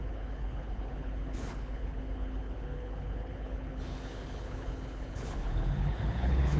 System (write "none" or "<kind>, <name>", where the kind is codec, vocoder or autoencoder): codec, HILCodec